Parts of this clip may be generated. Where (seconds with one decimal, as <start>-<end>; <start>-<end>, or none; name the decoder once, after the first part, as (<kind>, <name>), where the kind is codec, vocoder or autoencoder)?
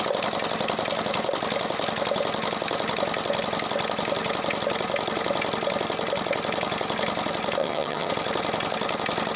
7.6-8.1 (vocoder, HiFi-GAN)